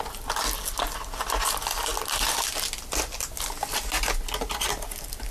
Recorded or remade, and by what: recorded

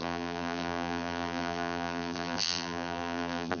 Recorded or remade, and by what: remade, vocoder, BigVGAN v2